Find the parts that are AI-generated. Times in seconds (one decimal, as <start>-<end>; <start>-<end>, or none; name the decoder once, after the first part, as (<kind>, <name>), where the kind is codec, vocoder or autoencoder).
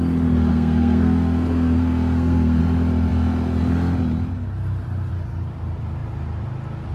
0.5-2.6 (codec, SNAC)